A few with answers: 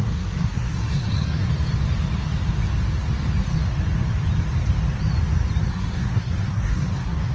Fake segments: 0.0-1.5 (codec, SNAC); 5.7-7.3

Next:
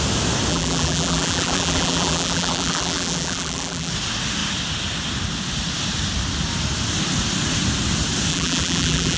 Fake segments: 0.5-3.9 (vocoder, BigVGAN v2); 8.3-9.2